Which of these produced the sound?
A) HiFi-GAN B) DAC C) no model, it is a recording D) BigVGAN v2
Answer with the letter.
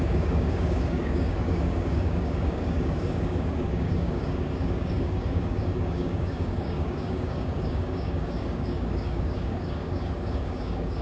B